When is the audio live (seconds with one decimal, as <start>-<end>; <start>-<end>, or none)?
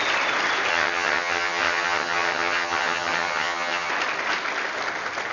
0.0-0.7; 3.9-5.3